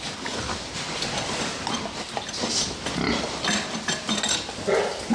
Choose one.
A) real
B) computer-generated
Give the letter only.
A